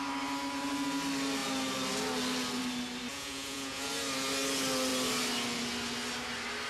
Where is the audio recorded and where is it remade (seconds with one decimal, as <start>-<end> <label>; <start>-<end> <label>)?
0.0-3.1 recorded; 3.1-3.9 remade; 3.9-6.7 recorded